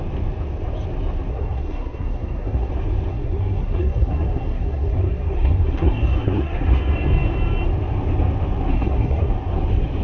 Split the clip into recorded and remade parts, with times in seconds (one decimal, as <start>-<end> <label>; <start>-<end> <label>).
0.0-1.3 recorded; 1.3-2.7 remade; 2.7-3.1 recorded; 3.1-6.8 remade; 6.8-8.7 recorded; 8.7-9.3 remade; 9.3-10.0 recorded